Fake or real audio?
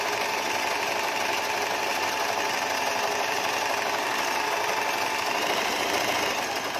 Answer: real